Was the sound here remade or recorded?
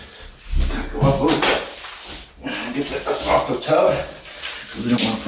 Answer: recorded